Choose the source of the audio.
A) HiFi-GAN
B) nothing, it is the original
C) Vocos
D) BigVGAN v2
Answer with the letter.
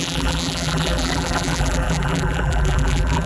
D